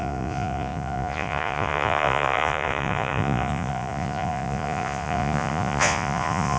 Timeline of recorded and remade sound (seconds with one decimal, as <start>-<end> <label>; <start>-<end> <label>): 0.0-6.6 remade